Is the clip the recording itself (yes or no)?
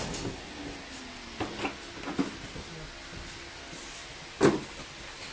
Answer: yes